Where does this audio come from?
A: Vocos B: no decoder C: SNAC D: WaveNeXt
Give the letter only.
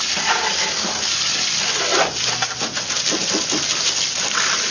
B